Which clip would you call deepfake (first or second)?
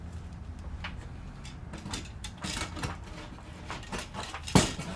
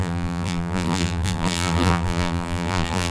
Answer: second